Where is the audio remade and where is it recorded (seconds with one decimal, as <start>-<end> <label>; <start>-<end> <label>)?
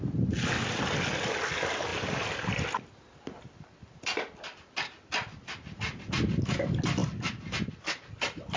0.0-8.6 recorded